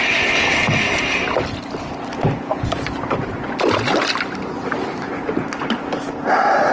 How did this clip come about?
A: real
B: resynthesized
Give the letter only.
A